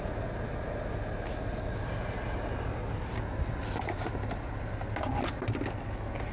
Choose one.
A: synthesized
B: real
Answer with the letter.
B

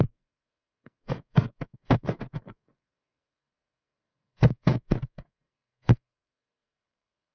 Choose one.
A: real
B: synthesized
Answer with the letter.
B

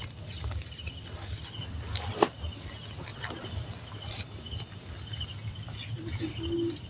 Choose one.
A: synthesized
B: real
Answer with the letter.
B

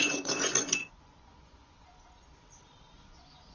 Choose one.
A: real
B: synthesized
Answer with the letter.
B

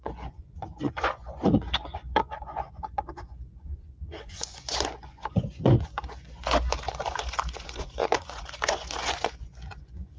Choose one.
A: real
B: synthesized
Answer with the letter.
B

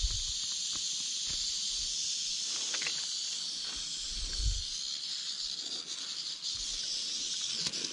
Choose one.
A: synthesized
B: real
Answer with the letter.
B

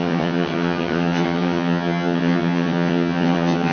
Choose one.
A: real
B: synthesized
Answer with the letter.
B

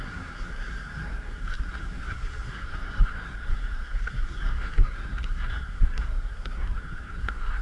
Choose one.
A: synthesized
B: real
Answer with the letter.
A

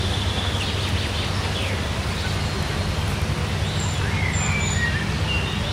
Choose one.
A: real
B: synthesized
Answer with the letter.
A